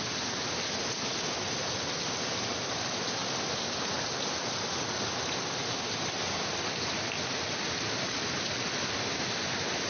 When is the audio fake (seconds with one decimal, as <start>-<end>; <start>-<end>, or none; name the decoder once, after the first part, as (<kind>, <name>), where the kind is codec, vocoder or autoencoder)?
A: none